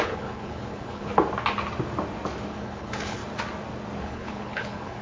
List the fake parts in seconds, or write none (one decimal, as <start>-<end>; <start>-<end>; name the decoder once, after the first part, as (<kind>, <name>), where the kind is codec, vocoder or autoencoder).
0.0-1.1 (codec, HILCodec); 2.5-3.2; 4.0-5.0